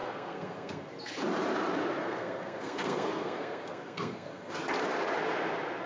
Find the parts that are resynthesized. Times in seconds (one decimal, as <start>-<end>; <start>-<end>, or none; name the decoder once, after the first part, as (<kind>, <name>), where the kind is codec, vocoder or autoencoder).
0.0-0.9 (codec, SNAC); 2.0-4.6